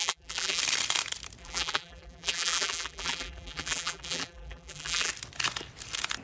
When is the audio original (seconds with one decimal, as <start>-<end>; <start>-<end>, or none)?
0.6-1.4; 5.1-6.2